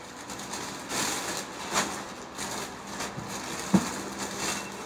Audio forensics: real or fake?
real